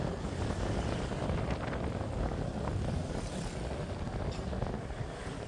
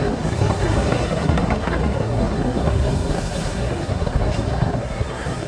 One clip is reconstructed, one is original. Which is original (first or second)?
first